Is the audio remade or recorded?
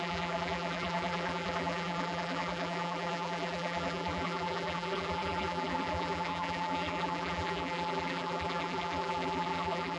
remade